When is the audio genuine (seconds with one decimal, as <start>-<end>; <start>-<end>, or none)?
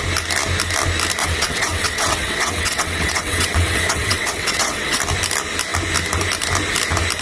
0.0-1.2; 5.0-7.2